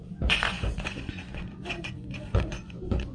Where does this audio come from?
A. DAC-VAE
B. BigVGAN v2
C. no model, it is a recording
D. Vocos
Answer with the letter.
D